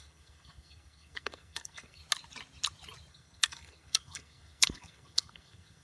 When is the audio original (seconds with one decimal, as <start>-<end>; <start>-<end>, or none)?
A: 2.0-3.1